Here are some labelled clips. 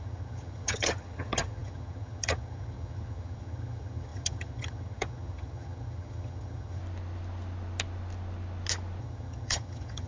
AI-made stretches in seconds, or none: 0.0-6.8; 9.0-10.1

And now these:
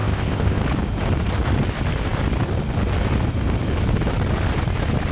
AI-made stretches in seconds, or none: 0.0-0.6

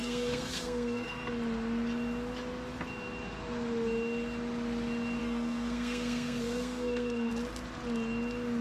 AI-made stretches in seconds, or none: 0.0-1.3; 5.2-7.3

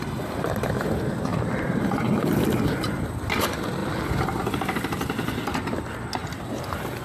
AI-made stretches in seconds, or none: 1.3-2.6; 3.8-4.4; 6.2-7.0

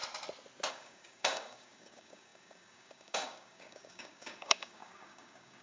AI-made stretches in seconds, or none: 0.7-5.6

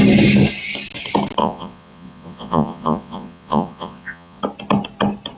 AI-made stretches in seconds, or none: 1.4-4.4

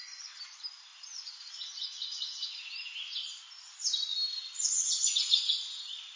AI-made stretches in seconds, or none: none